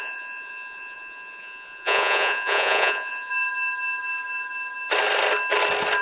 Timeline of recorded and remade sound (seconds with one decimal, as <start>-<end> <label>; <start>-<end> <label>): 0.0-3.3 remade; 3.3-6.0 recorded